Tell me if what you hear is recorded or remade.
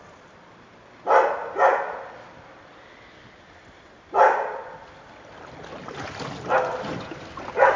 recorded